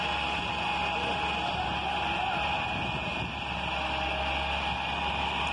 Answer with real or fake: real